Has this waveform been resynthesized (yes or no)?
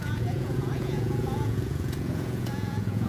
yes